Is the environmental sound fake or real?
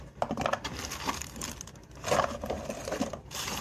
real